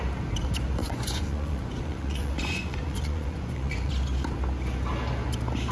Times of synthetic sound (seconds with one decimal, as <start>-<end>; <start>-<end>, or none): 0.8-3.9